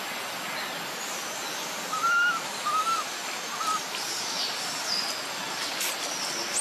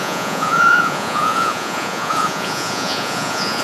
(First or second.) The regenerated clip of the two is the second